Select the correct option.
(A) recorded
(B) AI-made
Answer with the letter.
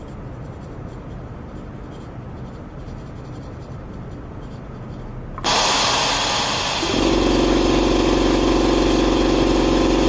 A